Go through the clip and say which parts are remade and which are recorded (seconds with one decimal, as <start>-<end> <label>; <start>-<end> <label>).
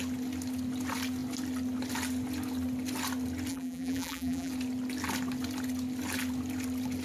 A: 0.0-3.5 recorded; 3.5-4.5 remade; 4.5-7.0 recorded